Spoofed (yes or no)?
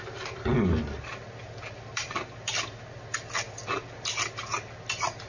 no